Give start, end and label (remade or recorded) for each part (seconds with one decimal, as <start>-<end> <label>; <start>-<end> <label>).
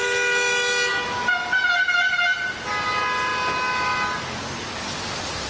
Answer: 0.0-5.5 recorded